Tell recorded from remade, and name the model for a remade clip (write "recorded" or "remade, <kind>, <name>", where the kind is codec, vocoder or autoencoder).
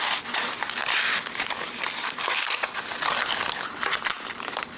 recorded